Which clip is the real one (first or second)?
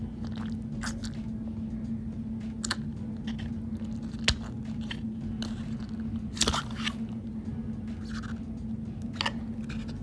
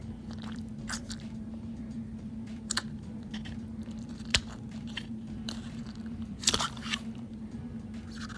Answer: first